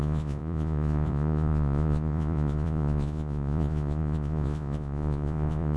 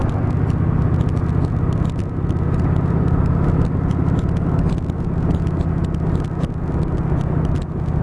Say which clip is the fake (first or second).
first